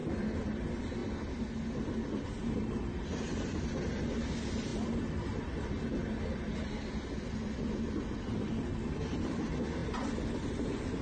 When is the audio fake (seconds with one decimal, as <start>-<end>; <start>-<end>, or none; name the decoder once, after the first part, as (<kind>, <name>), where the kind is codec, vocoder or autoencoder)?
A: none